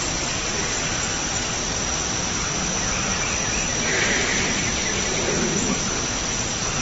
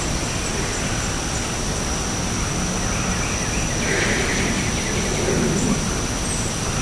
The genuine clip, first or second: second